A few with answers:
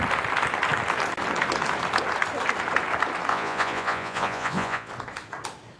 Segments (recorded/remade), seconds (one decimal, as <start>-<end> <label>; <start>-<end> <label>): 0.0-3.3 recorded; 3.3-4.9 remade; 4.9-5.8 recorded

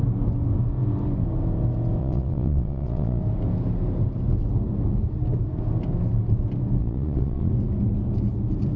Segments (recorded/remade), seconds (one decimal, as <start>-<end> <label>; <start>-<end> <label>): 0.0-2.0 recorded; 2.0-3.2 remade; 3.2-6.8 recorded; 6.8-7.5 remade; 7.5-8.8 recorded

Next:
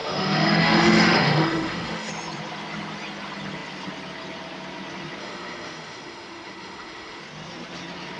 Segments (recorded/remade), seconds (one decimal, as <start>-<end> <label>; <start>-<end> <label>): 0.0-2.1 remade; 2.1-5.2 recorded; 5.2-7.2 remade; 7.2-8.2 recorded